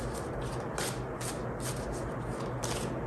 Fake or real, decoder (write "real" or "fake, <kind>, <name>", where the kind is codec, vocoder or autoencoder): real